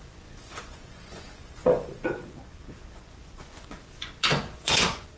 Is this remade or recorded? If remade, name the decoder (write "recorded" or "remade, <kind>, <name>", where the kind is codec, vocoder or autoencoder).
remade, vocoder, Vocos